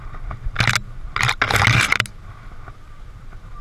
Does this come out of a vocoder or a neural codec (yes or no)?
no